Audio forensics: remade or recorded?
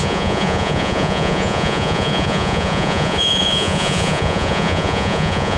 remade